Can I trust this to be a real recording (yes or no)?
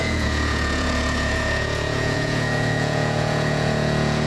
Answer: no